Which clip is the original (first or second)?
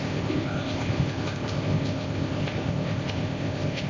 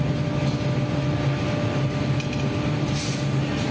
second